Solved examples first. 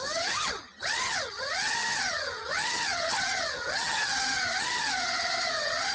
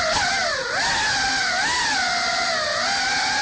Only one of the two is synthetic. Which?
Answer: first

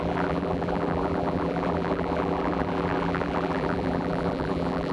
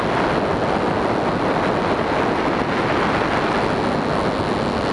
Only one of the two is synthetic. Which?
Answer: first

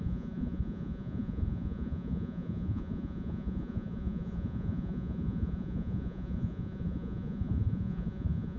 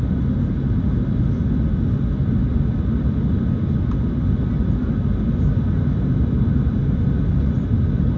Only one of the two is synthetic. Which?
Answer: first